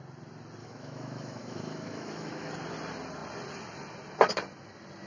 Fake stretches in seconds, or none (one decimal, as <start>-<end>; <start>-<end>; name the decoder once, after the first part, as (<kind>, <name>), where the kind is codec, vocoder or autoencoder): 0.6-2.5 (autoencoder, DAC-VAE)

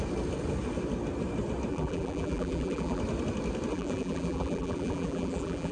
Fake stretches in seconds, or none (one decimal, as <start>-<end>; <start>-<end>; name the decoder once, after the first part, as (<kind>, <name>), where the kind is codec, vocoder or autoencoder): 1.7-3.0 (vocoder, BigVGAN v2); 3.7-5.7

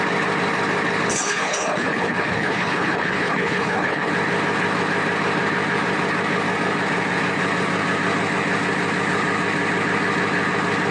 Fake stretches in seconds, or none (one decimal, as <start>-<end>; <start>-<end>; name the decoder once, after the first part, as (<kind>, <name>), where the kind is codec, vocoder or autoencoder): 1.1-4.1 (codec, HILCodec)

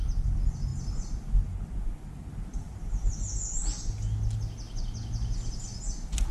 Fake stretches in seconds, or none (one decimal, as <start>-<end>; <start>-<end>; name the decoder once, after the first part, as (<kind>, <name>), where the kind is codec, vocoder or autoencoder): none

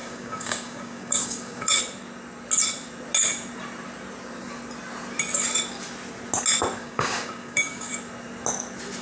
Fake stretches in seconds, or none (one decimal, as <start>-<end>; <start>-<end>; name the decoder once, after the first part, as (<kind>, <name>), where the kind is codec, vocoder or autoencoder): 0.0-1.8 (codec, DAC); 6.8-7.9

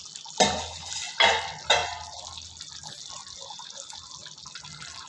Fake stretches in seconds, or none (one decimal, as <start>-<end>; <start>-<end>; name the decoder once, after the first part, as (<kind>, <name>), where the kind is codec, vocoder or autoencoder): none